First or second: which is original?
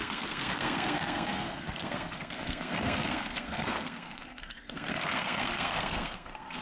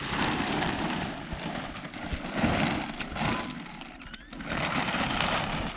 second